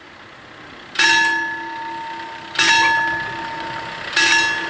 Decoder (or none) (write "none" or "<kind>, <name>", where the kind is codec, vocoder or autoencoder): none